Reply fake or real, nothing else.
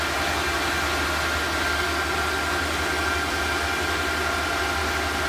real